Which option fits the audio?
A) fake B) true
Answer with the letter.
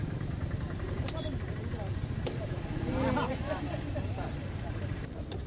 A